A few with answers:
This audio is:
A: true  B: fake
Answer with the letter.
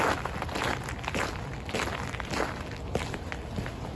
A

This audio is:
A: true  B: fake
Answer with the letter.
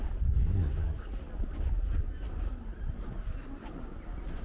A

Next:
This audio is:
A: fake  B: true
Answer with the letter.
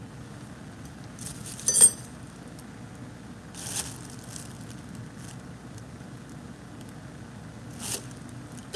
B